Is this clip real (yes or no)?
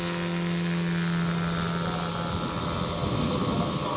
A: yes